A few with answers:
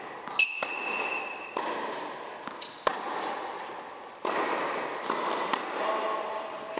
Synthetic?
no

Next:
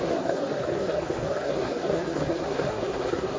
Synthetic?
yes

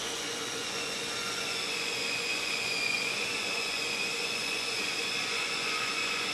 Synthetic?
yes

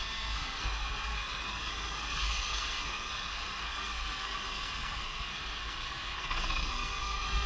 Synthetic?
yes